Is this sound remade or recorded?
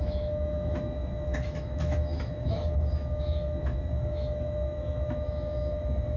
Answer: remade